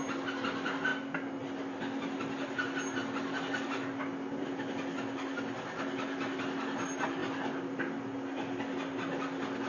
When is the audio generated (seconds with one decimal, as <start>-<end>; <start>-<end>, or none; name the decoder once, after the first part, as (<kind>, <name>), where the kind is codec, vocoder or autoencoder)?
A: none